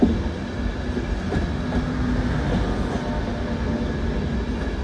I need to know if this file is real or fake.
real